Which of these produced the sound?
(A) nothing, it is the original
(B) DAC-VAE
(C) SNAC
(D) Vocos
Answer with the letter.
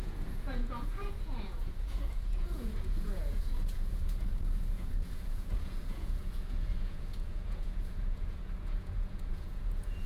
D